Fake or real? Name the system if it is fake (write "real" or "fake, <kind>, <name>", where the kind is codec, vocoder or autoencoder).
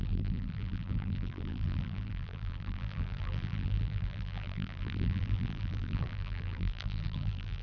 fake, vocoder, BigVGAN v2